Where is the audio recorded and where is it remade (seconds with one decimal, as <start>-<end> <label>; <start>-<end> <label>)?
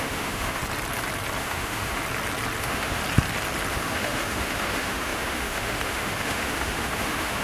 0.0-0.6 remade; 0.6-1.4 recorded; 1.4-2.0 remade; 2.0-2.6 recorded; 2.6-3.0 remade; 3.0-3.7 recorded; 3.7-7.4 remade